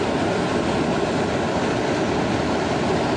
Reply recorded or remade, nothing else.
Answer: recorded